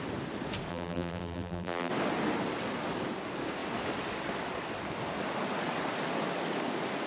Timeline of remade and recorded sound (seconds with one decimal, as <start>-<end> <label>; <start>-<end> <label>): 0.0-0.7 recorded; 0.7-1.9 remade; 1.9-7.1 recorded